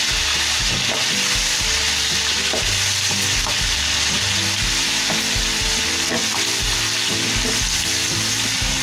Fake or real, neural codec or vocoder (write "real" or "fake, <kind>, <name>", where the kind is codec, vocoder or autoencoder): real